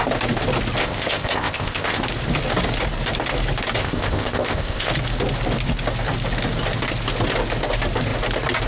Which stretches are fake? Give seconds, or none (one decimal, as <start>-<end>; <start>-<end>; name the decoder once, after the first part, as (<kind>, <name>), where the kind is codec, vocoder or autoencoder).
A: 0.8-2.0 (codec, ZipCodec); 3.8-4.9